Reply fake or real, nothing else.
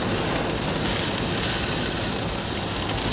real